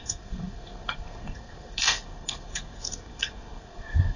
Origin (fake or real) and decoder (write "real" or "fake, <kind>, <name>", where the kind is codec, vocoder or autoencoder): fake, codec, SNAC